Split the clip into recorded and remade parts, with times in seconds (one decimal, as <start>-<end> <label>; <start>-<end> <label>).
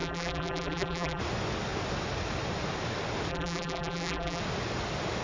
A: 0.0-1.2 remade; 1.2-3.3 recorded; 3.3-4.4 remade; 4.4-5.2 recorded